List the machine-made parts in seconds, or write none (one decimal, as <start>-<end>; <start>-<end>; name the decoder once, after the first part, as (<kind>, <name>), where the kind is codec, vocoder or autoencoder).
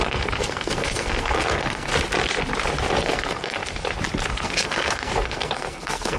0.0-1.9 (codec, SNAC); 3.0-3.6; 4.3-6.2